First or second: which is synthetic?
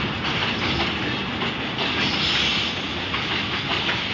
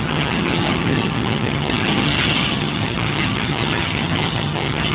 second